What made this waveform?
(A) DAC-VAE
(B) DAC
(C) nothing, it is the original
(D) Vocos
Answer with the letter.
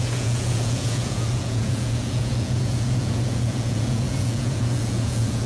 D